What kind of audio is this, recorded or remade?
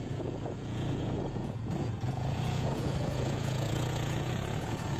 remade